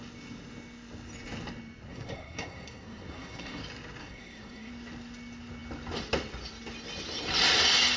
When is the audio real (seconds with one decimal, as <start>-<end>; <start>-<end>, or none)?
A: 0.0-1.9; 3.6-4.0; 4.7-8.0